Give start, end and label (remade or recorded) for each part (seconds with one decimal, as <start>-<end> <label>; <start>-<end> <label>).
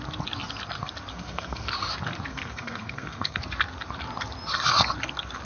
0.0-1.1 recorded; 1.1-1.7 remade; 1.7-2.3 recorded; 2.3-3.4 remade; 3.4-5.5 recorded